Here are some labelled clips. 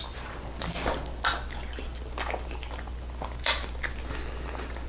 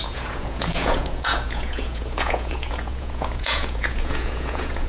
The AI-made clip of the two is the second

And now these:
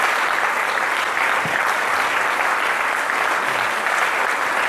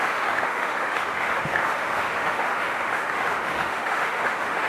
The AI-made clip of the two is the second